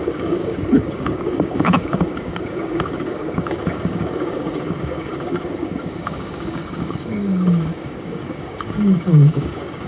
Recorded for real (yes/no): no